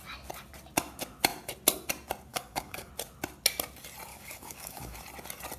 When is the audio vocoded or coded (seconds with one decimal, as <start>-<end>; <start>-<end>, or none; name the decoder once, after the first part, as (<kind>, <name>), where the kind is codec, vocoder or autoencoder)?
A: 2.3-2.9 (codec, DAC); 4.1-5.0